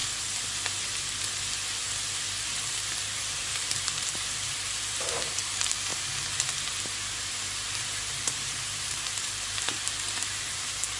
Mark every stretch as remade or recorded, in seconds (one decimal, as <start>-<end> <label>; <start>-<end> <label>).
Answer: 0.0-2.4 recorded; 2.4-5.9 remade; 5.9-8.0 recorded; 8.0-11.0 remade